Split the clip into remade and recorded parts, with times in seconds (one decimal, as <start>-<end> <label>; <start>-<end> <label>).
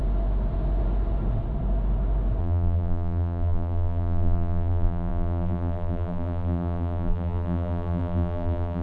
0.0-2.4 recorded; 2.4-8.8 remade